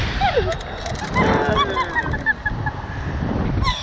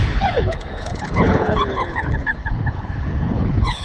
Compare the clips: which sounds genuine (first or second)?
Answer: first